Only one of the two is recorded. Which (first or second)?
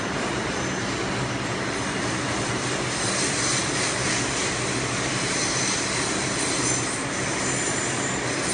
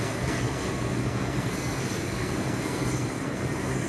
first